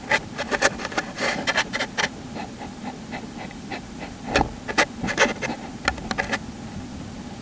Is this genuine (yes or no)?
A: yes